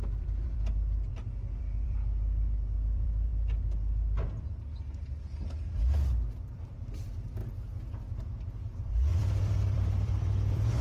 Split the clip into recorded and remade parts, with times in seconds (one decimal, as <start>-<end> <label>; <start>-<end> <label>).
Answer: 0.0-1.1 remade; 1.1-1.6 recorded; 1.6-3.3 remade; 3.3-6.4 recorded; 6.4-7.4 remade; 7.4-8.7 recorded; 8.7-10.8 remade